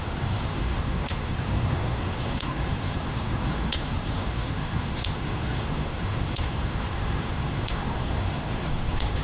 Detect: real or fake fake